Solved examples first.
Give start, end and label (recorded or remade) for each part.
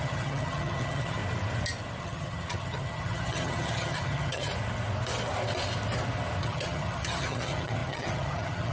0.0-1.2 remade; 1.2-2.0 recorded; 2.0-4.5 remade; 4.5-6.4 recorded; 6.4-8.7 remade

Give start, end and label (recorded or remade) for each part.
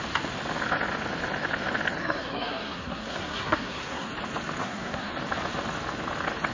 0.0-2.0 recorded; 2.0-4.1 remade; 4.1-4.6 recorded; 4.6-5.1 remade; 5.1-6.5 recorded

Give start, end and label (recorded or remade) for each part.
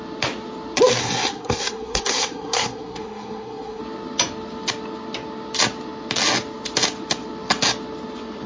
0.0-1.0 recorded; 1.0-3.8 remade; 3.8-8.5 recorded